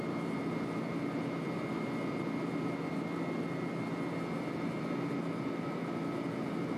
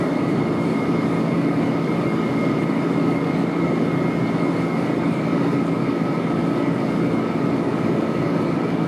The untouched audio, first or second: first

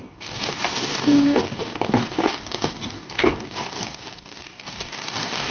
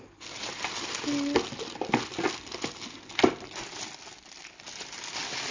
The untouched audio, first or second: second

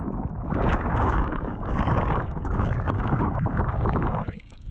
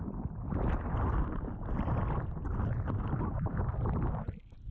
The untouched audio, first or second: second